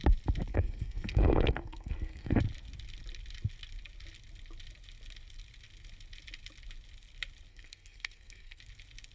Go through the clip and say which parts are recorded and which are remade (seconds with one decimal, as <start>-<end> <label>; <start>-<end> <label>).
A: 0.0-0.5 recorded; 0.5-2.4 remade; 2.4-7.5 recorded; 7.5-8.6 remade; 8.6-9.1 recorded

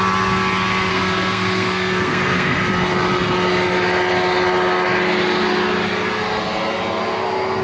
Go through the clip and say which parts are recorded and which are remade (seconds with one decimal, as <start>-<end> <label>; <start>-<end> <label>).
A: 0.0-0.9 recorded; 0.9-2.6 remade; 2.6-7.6 recorded

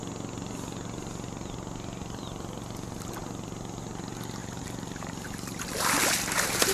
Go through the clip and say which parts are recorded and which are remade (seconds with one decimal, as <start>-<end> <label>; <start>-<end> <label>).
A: 0.0-4.4 recorded; 4.4-5.7 remade; 5.7-6.7 recorded

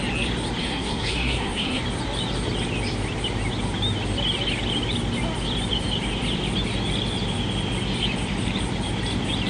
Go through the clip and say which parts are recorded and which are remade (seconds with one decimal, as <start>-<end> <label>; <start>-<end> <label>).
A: 0.0-0.6 recorded; 0.6-1.8 remade; 1.8-9.5 recorded

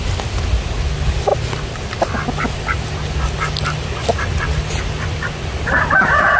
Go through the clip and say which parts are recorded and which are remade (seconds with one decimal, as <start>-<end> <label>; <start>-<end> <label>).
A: 0.0-6.4 recorded

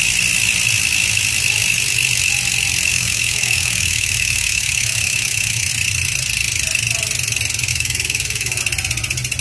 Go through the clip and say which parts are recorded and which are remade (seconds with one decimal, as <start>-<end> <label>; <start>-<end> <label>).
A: 0.0-2.9 recorded; 2.9-5.7 remade; 5.7-7.7 recorded; 7.7-8.6 remade; 8.6-9.4 recorded